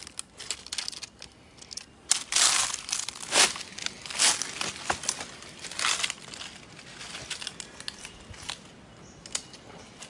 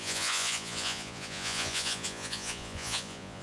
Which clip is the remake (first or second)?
second